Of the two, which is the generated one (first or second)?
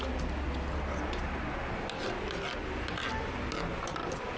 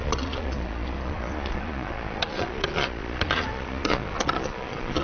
second